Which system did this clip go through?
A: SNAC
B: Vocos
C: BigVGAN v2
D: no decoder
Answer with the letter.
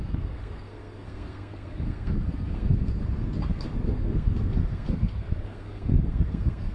A